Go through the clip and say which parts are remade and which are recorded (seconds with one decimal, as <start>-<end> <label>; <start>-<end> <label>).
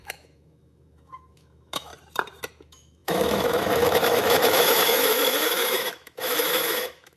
0.0-1.9 remade; 1.9-2.5 recorded; 2.5-7.2 remade